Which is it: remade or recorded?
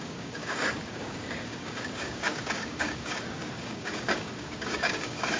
remade